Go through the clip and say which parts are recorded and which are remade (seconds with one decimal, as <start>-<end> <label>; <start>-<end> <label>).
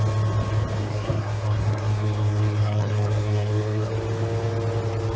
0.0-0.8 recorded; 0.8-3.9 remade; 3.9-5.2 recorded